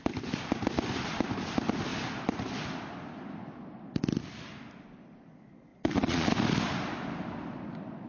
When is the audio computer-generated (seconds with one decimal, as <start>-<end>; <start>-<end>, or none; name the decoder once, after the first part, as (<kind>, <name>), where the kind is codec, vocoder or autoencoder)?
5.7-6.3 (vocoder, Vocos)